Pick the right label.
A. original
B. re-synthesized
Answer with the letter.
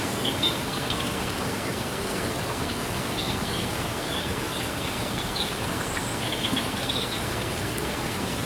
B